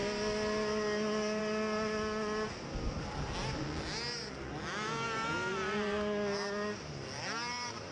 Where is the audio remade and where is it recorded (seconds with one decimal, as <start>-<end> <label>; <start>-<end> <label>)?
0.0-7.9 recorded

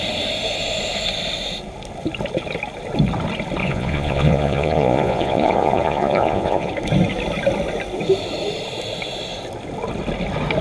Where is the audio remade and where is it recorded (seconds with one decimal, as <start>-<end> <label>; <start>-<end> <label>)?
0.0-3.6 recorded; 3.6-6.7 remade; 6.7-10.6 recorded

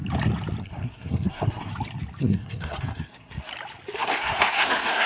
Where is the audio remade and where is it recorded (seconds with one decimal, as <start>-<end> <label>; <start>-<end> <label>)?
0.0-0.6 recorded; 0.6-1.7 remade; 1.7-2.2 recorded; 2.2-3.5 remade; 3.5-4.0 recorded; 4.0-5.1 remade

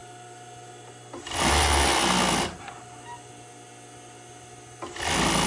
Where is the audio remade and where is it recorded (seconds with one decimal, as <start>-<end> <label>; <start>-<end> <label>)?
0.0-5.5 recorded

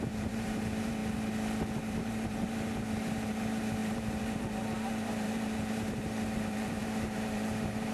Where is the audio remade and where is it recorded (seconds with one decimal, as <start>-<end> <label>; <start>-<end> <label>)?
0.0-1.0 remade; 1.0-1.8 recorded; 1.8-7.9 remade

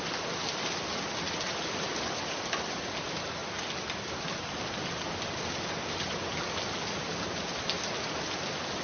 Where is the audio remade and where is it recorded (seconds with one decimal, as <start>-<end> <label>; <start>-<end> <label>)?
0.0-8.8 recorded

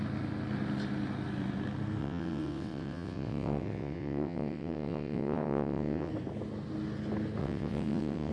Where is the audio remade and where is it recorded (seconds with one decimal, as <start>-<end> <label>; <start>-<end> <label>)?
0.0-2.0 recorded; 2.0-6.1 remade; 6.1-7.4 recorded; 7.4-8.3 remade